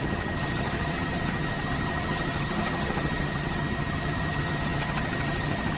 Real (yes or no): no